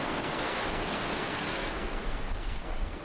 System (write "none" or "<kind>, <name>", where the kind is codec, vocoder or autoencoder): codec, SNAC